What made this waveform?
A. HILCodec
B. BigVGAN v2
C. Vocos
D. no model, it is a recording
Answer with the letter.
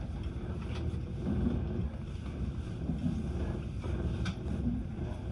D